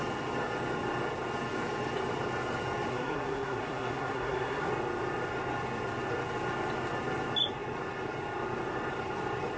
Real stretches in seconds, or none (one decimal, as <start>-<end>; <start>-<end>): 0.0-2.9; 4.7-9.6